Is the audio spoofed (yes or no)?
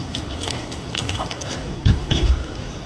yes